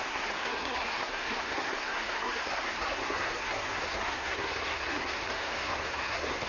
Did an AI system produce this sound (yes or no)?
yes